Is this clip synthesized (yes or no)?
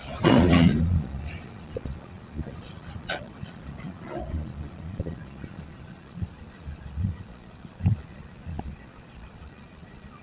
yes